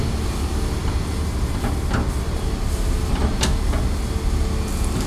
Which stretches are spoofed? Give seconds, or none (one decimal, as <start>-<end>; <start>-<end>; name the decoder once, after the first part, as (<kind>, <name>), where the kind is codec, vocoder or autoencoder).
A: none